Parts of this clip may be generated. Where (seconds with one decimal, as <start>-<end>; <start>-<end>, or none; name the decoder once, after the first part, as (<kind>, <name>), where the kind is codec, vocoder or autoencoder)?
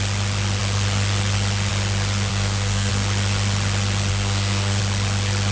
2.3-2.9 (codec, SNAC); 4.1-4.8